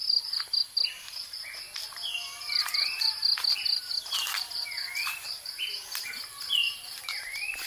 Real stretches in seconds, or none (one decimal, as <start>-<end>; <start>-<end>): 0.0-4.2; 6.1-6.6